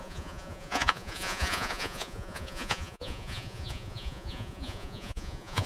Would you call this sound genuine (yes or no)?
no